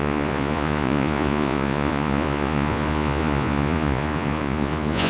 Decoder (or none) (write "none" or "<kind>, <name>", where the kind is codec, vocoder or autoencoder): vocoder, Vocos